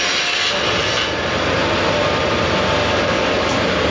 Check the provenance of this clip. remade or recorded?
recorded